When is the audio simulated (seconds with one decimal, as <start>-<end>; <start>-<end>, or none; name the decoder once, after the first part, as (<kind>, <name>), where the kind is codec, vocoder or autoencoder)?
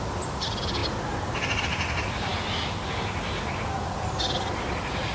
0.0-0.8 (vocoder, BigVGAN v2); 1.6-2.3